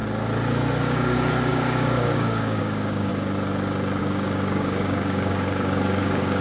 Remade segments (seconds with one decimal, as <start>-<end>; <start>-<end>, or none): 0.8-3.1; 4.0-6.4